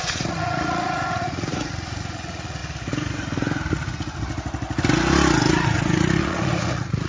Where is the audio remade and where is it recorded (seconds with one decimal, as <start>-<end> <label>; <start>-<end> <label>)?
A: 0.0-2.6 remade; 2.6-5.5 recorded; 5.5-7.1 remade